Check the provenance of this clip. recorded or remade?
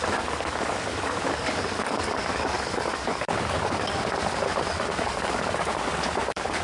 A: remade